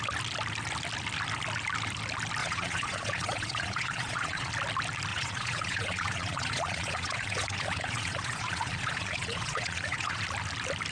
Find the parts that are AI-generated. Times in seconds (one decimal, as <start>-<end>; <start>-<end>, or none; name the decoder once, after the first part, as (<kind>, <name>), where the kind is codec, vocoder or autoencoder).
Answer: 2.4-4.5 (vocoder, Vocos); 5.1-10.2